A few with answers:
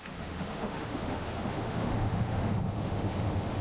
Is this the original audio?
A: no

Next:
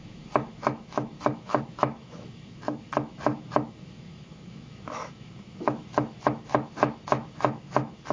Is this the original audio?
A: no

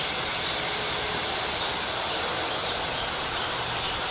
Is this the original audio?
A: yes